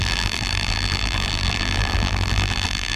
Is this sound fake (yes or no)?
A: yes